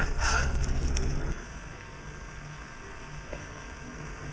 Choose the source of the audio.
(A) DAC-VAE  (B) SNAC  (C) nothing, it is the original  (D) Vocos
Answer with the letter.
B